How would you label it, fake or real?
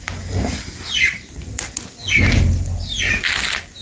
real